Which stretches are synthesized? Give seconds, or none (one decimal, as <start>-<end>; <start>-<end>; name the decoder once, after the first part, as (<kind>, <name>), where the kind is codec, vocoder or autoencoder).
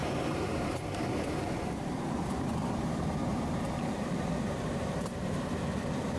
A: 0.0-0.7 (vocoder, BigVGAN v2); 3.2-5.4